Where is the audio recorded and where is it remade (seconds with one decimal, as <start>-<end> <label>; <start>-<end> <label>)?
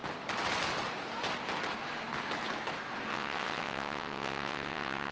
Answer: 0.0-3.1 recorded; 3.1-5.1 remade